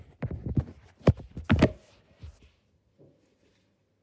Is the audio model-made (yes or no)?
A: no